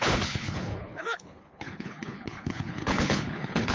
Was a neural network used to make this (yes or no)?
yes